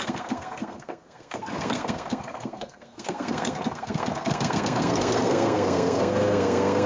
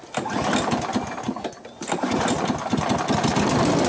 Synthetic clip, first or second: first